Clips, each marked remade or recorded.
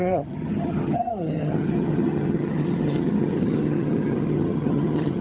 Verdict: remade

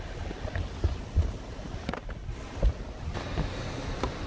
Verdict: recorded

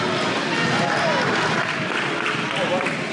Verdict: recorded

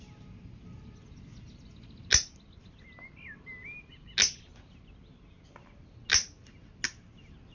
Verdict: recorded